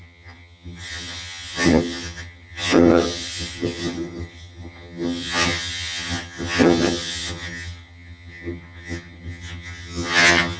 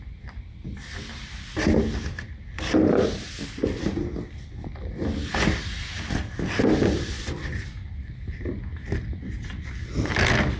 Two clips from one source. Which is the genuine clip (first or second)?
second